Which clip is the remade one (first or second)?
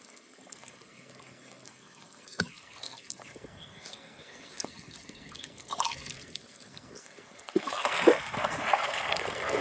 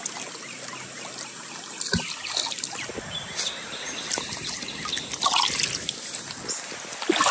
first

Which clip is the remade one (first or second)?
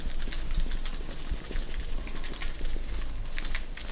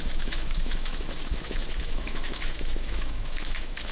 second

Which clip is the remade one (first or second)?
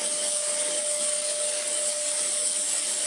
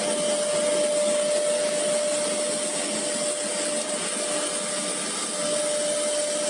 first